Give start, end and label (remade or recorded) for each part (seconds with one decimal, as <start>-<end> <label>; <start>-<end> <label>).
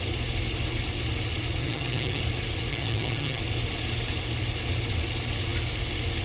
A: 0.0-1.6 recorded; 1.6-2.2 remade; 2.2-2.7 recorded; 2.7-3.4 remade; 3.4-6.2 recorded